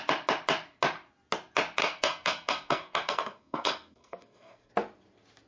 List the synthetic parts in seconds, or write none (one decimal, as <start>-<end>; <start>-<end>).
1.8-4.7